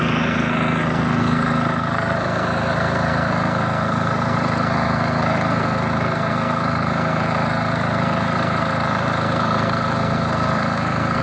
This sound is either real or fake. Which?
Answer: fake